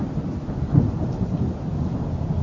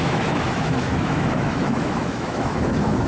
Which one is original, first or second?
first